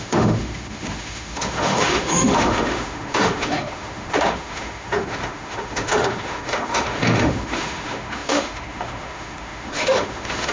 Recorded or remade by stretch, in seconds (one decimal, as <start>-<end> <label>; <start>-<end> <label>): 0.0-10.5 remade